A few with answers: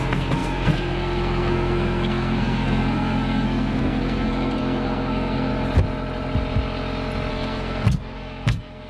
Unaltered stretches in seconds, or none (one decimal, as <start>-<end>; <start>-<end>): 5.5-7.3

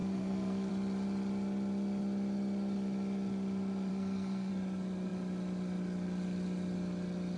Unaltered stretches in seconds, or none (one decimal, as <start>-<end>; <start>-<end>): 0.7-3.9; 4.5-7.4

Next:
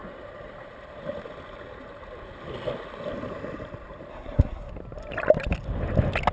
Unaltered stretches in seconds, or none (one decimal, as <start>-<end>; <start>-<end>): 0.0-4.1; 4.7-6.3

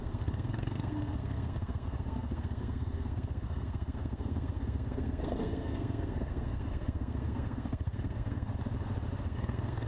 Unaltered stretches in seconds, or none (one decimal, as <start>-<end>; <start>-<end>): 8.5-9.2

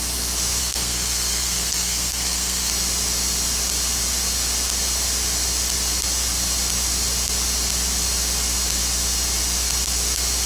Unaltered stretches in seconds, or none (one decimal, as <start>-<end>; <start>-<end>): 0.0-0.6; 2.7-10.5

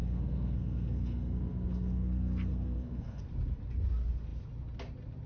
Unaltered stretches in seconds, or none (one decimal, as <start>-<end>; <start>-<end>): 3.2-5.3

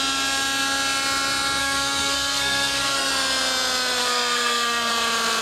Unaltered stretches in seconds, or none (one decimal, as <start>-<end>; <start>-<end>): 0.0-1.6; 3.1-4.0; 4.9-5.4